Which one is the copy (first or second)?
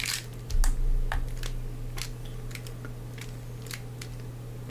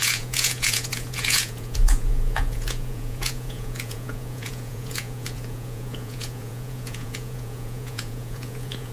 second